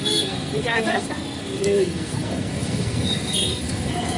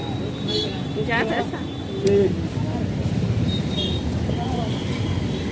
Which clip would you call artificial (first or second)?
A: first